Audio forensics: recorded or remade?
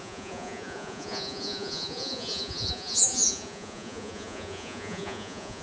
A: remade